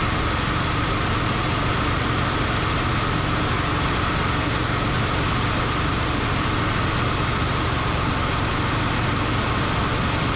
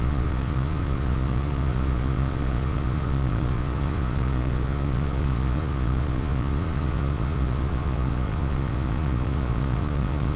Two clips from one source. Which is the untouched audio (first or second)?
first